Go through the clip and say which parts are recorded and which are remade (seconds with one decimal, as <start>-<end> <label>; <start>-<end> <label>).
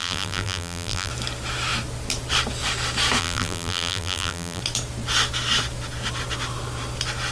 0.0-1.1 remade; 1.1-3.2 recorded; 3.2-4.6 remade; 4.6-7.3 recorded